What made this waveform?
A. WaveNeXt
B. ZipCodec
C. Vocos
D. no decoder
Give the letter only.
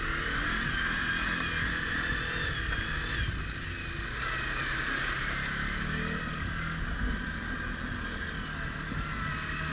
D